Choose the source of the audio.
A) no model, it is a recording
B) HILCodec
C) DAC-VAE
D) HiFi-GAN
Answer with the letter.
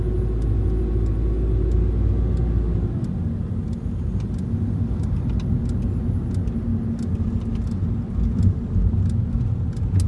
A